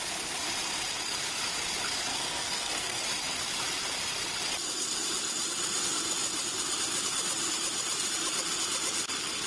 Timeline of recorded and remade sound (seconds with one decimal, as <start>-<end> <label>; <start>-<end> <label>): 0.0-2.1 recorded; 2.1-3.0 remade; 3.0-9.5 recorded